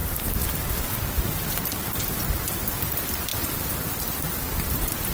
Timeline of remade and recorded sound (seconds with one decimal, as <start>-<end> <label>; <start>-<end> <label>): 0.0-5.1 recorded